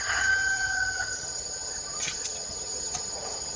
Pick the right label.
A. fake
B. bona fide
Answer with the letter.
A